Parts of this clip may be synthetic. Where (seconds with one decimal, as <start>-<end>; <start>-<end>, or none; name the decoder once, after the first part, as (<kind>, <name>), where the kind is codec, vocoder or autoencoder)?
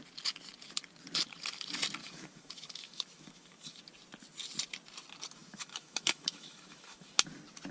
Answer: 2.0-3.8 (autoencoder, DAC-VAE); 5.5-7.1